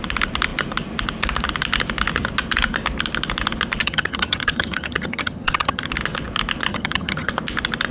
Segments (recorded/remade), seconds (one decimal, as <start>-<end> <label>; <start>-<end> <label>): 0.0-3.8 recorded; 3.8-5.9 remade; 5.9-6.7 recorded; 6.7-7.3 remade; 7.3-7.9 recorded